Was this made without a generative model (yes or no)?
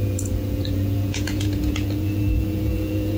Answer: no